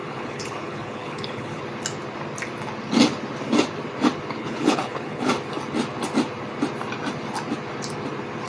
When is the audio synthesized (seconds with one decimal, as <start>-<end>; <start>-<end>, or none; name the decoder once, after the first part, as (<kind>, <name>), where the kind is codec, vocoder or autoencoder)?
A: 0.0-1.6 (codec, HILCodec); 4.4-5.3